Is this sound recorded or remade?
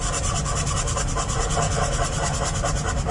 recorded